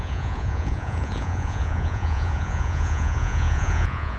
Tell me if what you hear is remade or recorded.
remade